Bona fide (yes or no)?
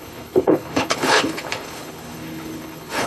no